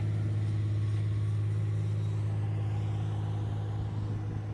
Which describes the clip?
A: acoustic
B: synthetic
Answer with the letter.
A